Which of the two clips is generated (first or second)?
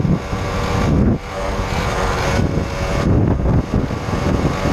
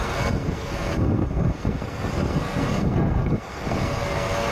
second